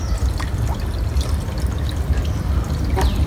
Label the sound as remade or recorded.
recorded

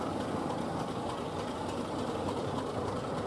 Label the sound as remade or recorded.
recorded